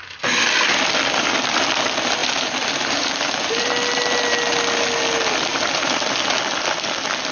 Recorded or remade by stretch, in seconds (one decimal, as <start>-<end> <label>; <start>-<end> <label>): 0.0-2.2 recorded; 2.2-3.7 remade; 3.7-7.3 recorded